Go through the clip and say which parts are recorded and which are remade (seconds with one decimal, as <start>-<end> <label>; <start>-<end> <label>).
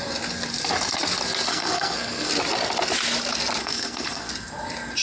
0.0-1.5 recorded; 1.5-2.3 remade; 2.3-3.6 recorded; 3.6-4.3 remade; 4.3-5.0 recorded